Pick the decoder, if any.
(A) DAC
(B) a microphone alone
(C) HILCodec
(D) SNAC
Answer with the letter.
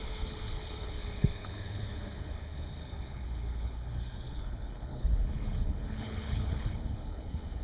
C